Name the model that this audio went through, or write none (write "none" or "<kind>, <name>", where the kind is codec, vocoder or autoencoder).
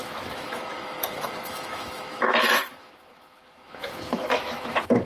autoencoder, DAC-VAE